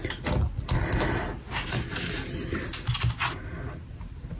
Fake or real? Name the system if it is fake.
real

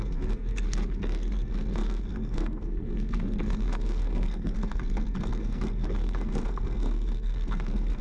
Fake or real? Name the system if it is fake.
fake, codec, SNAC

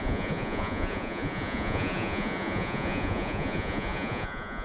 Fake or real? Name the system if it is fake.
fake, vocoder, Vocos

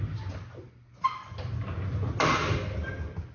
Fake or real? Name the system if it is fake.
real